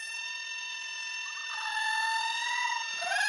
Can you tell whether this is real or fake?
real